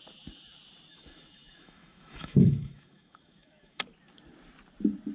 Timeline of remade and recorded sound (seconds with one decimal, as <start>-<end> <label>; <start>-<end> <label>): 0.0-0.9 recorded; 0.9-3.8 remade; 3.8-5.1 recorded